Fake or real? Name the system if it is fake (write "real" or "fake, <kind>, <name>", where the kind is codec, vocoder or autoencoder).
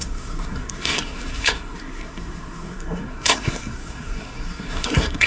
fake, codec, SNAC